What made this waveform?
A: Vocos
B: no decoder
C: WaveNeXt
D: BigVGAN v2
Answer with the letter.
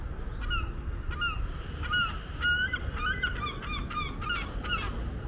B